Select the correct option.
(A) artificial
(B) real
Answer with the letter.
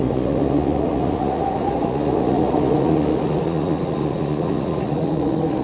A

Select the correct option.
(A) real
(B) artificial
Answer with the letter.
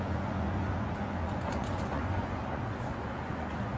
B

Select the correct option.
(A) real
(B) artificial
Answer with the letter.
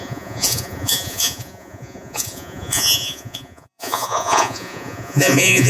B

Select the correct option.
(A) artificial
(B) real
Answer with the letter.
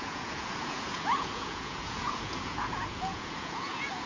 A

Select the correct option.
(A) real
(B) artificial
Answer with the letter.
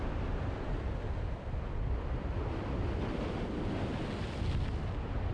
A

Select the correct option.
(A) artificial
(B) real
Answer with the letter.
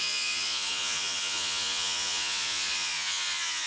A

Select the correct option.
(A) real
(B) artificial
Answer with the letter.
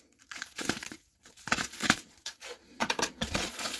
B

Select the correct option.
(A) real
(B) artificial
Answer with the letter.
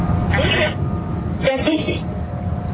A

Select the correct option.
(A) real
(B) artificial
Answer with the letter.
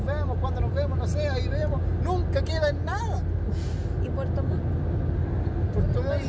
A